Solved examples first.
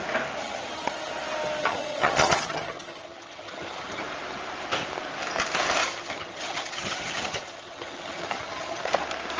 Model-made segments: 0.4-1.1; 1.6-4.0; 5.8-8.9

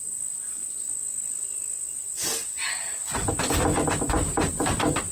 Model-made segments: none

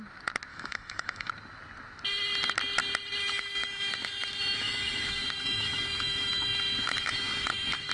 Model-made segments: 0.5-1.3; 3.2-7.9

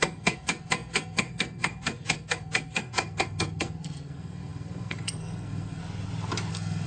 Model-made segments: 0.0-5.8; 6.5-6.9